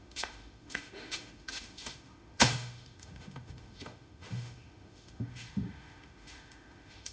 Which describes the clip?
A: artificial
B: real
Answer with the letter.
A